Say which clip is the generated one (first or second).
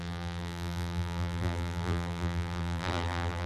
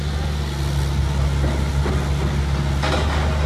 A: first